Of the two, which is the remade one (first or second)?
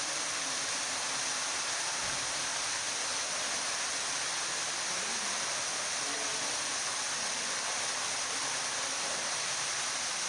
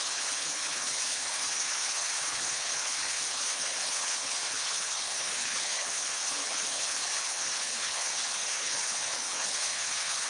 second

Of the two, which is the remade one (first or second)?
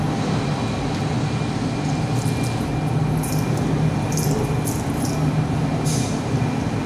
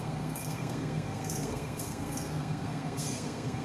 second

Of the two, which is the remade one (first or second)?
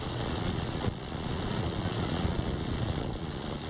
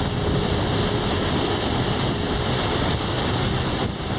first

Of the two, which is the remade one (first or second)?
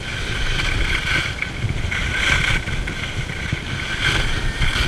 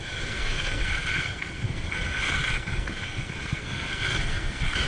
second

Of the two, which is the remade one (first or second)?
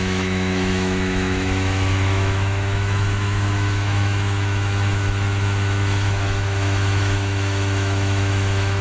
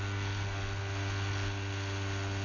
first